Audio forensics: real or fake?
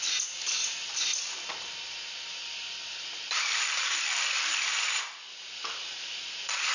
real